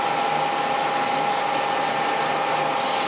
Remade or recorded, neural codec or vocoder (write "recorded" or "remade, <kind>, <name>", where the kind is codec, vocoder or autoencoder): recorded